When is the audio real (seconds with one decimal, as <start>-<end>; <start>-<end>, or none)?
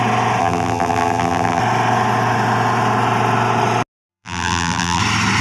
0.0-0.4; 1.6-4.1; 5.0-5.4